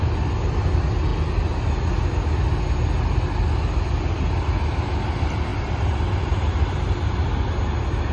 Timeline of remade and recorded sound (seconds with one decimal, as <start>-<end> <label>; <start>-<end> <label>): 0.0-5.5 recorded; 5.5-6.9 remade; 6.9-8.1 recorded